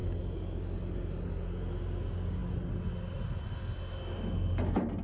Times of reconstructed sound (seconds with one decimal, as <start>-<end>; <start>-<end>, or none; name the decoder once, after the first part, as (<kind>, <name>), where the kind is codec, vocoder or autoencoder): none